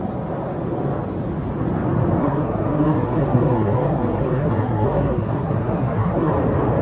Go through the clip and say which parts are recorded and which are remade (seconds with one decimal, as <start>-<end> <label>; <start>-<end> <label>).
0.0-2.2 recorded; 2.2-6.3 remade; 6.3-6.8 recorded